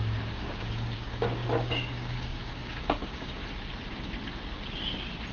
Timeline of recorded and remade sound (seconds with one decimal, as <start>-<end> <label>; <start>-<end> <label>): 0.0-3.4 remade; 3.4-5.3 recorded